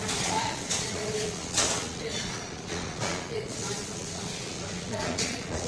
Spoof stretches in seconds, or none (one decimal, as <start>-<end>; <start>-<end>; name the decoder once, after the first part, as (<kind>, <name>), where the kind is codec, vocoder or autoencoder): 0.0-5.7 (vocoder, Vocos)